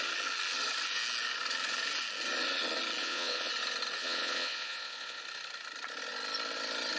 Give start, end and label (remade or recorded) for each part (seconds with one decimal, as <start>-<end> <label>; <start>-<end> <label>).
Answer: 0.0-3.0 recorded; 3.0-3.5 remade; 3.5-4.0 recorded; 4.0-5.2 remade; 5.2-7.0 recorded